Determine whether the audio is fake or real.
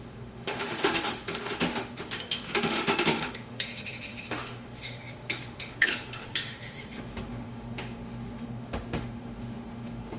fake